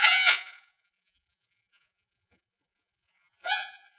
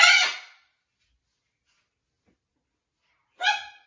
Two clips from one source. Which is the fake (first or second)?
first